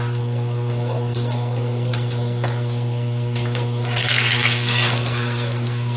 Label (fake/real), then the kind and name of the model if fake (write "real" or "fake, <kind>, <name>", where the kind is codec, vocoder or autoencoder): fake, codec, SNAC